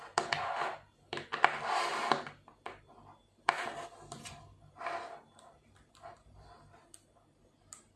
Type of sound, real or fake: real